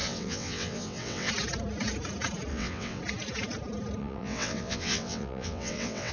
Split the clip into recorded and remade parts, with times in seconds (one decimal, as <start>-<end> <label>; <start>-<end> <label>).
0.0-1.3 remade; 1.3-2.5 recorded; 2.5-3.0 remade; 3.0-4.0 recorded; 4.0-6.1 remade